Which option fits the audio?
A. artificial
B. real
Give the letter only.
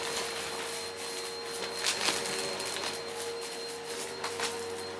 B